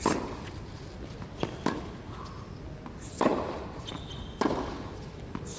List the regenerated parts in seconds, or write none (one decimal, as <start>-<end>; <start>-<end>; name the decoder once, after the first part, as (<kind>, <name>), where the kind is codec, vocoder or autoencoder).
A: none